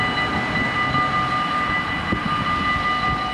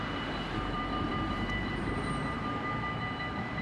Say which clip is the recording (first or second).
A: first